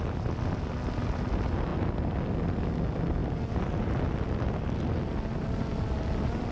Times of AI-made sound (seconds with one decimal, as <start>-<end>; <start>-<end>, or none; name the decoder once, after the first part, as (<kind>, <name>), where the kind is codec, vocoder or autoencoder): none